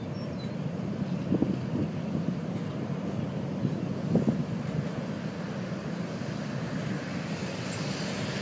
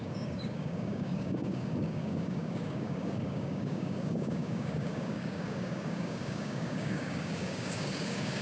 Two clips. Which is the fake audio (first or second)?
second